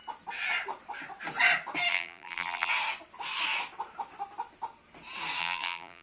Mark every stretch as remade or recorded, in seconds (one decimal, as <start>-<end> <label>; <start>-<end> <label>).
0.0-1.9 recorded; 1.9-2.7 remade; 2.7-5.4 recorded; 5.4-6.0 remade